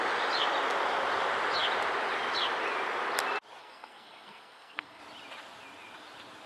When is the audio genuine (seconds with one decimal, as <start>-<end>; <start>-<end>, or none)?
0.0-3.6; 5.0-6.5